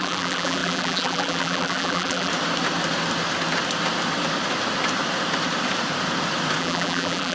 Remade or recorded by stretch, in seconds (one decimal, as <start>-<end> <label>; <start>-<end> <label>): 0.0-2.3 remade; 2.3-6.6 recorded; 6.6-7.3 remade